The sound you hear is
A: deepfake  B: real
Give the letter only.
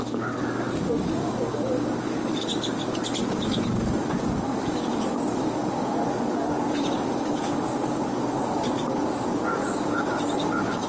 A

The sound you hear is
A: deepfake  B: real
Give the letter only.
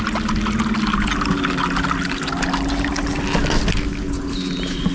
B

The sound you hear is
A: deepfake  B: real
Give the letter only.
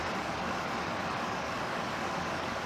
A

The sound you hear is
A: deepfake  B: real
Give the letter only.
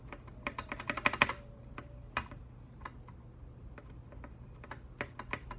B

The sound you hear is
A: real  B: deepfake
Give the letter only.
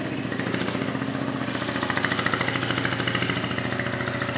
A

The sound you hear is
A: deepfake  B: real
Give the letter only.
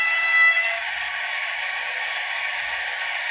A